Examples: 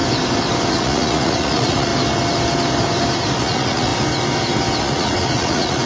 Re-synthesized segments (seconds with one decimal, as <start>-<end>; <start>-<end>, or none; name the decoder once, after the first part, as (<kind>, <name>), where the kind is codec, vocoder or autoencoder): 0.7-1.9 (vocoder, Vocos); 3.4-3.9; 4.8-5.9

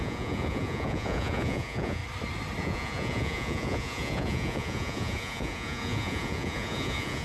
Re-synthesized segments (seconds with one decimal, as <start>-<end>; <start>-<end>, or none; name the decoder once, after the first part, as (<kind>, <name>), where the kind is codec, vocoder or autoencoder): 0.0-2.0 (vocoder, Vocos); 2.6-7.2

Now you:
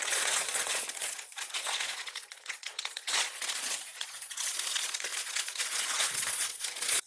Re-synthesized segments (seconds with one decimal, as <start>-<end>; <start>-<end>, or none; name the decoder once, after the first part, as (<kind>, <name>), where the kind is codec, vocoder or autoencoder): 0.0-7.1 (vocoder, Vocos)

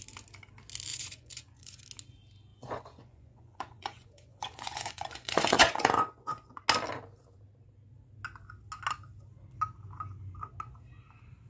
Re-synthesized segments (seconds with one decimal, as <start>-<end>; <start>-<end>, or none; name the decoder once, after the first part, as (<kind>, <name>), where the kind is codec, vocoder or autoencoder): 0.9-1.8 (vocoder, Vocos); 2.5-6.6

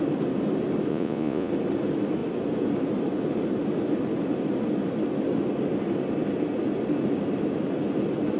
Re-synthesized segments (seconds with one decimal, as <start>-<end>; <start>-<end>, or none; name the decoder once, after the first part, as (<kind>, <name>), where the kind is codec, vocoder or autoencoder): 0.9-1.5 (vocoder, Vocos)